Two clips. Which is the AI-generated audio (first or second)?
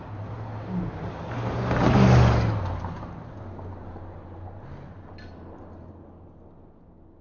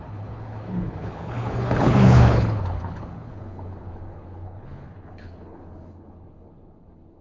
second